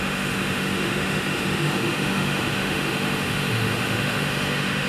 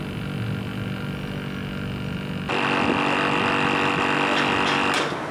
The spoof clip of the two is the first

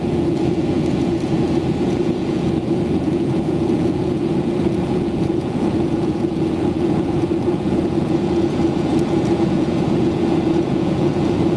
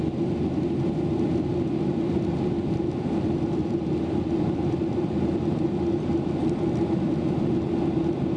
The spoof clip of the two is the first